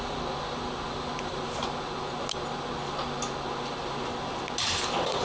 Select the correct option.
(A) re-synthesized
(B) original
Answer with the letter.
B